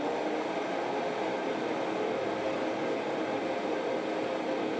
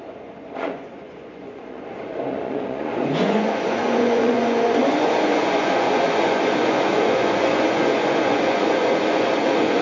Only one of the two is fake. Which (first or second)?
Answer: second